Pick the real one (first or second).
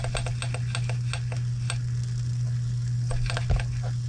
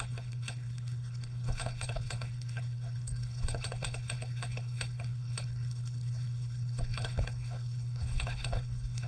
first